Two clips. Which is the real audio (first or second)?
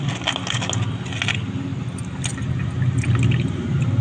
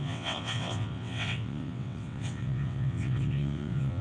first